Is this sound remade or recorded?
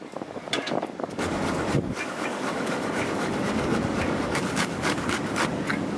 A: remade